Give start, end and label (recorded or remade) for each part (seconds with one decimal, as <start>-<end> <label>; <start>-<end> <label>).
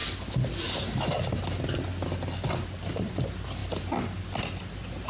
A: 0.0-5.1 recorded